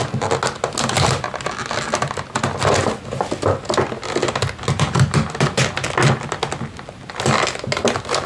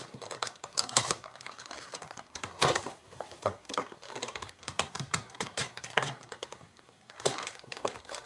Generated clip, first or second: second